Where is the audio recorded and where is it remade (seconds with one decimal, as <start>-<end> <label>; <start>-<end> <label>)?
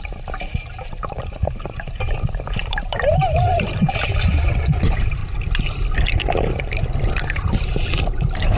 0.0-5.2 remade; 5.2-8.0 recorded; 8.0-8.6 remade